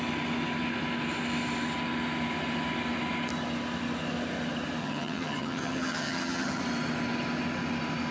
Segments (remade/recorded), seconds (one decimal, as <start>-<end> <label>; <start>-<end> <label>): 0.0-4.8 recorded; 4.8-6.6 remade; 6.6-8.1 recorded